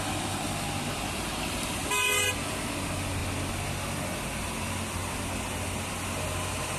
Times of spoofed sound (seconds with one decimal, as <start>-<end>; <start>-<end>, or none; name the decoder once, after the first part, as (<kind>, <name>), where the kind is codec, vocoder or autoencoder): none